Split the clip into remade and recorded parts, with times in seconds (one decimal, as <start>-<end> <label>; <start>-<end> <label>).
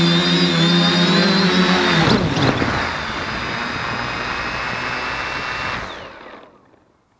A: 0.0-1.2 recorded; 1.2-3.3 remade; 3.3-7.2 recorded